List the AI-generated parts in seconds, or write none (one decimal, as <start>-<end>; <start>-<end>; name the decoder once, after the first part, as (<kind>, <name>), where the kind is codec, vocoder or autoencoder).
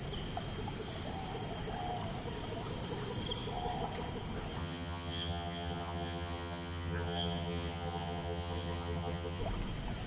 4.6-9.4 (vocoder, HiFi-GAN)